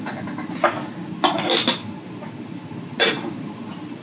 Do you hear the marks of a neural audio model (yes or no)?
no